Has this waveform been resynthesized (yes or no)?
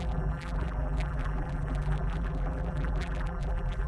yes